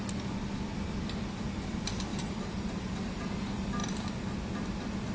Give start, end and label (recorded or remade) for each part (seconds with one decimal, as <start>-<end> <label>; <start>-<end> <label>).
0.0-2.1 recorded; 2.1-3.2 remade; 3.2-5.1 recorded